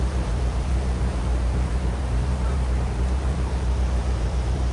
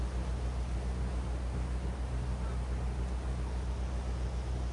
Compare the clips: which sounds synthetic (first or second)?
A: first